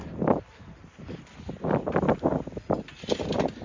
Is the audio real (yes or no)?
yes